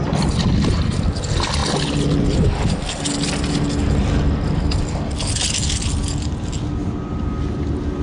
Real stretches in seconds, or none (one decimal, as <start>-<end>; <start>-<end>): 0.0-8.0